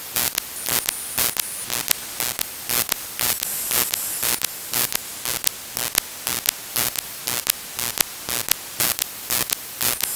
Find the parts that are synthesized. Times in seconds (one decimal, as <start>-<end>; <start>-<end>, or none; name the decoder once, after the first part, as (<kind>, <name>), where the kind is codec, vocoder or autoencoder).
0.0-1.6 (vocoder, BigVGAN v2); 2.4-5.0; 6.7-7.2; 8.8-10.2